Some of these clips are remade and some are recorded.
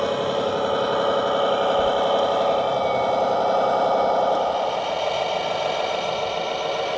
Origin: recorded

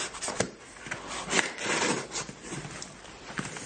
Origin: recorded